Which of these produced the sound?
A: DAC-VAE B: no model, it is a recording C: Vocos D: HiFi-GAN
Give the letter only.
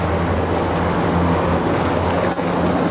B